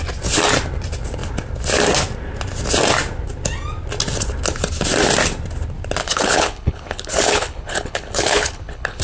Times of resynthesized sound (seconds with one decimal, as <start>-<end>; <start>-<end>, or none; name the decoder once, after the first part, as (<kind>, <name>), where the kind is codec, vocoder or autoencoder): 6.0-9.0 (codec, HILCodec)